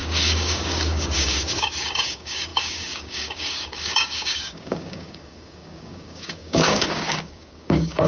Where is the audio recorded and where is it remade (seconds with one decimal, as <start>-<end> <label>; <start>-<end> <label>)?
0.0-8.1 remade